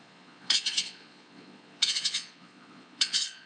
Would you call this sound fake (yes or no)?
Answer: yes